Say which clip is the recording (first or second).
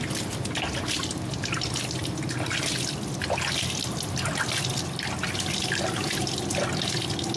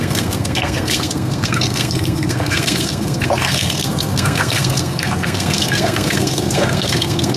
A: first